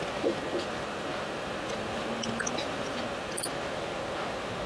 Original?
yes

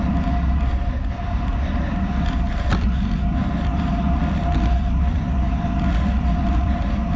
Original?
yes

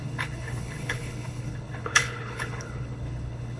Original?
no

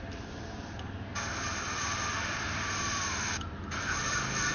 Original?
yes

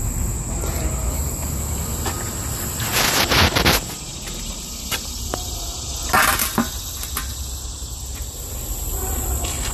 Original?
yes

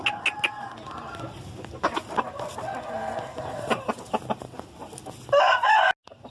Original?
yes